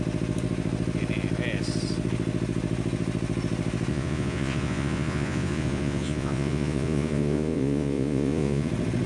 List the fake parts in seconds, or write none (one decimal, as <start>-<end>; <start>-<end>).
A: 3.9-8.7